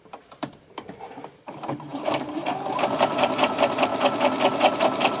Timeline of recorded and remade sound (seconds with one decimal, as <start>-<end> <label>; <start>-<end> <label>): 0.0-3.9 remade; 3.9-5.2 recorded